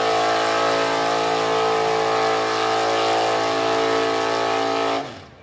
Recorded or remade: recorded